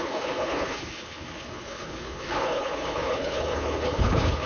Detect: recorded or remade remade